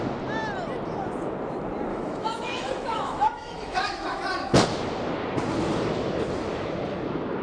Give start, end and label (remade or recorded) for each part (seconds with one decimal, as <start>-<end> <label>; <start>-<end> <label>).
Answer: 0.0-1.9 recorded; 1.9-4.2 remade; 4.2-7.4 recorded

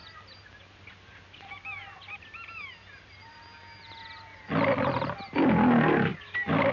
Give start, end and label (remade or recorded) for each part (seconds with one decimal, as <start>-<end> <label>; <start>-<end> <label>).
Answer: 0.0-6.7 recorded

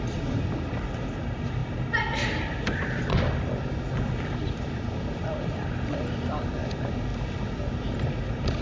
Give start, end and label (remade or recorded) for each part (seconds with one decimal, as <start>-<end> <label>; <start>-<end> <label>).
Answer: 0.0-8.6 recorded

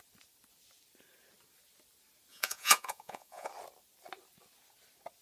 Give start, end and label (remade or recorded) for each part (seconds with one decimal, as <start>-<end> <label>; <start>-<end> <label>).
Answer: 0.0-2.3 recorded; 2.3-3.5 remade; 3.5-5.2 recorded

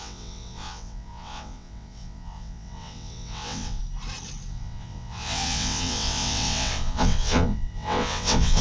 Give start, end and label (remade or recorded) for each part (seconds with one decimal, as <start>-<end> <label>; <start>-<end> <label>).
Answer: 0.0-3.8 remade; 3.8-4.5 recorded; 4.5-8.6 remade

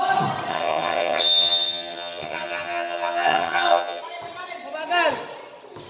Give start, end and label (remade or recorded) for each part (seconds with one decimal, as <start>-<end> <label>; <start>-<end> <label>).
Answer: 0.0-0.5 recorded; 0.5-4.0 remade; 4.0-5.9 recorded

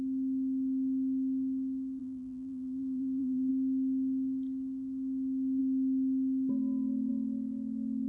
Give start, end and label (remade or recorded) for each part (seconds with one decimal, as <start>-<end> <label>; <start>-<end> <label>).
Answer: 0.0-2.0 recorded; 2.0-3.5 remade; 3.5-8.1 recorded